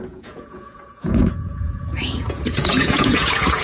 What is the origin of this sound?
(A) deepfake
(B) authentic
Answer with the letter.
A